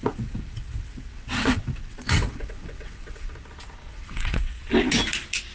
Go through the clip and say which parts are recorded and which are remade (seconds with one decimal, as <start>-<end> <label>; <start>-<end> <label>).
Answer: 0.0-3.3 remade; 3.3-3.9 recorded; 3.9-4.6 remade; 4.6-5.5 recorded